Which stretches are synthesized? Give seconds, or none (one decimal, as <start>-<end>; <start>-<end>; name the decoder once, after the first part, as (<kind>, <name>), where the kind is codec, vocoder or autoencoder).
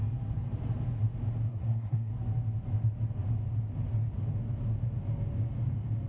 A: 1.5-2.1 (codec, SNAC)